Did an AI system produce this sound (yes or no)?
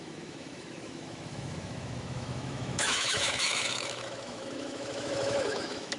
yes